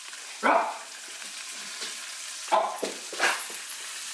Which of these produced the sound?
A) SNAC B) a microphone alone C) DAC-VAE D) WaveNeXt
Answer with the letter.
B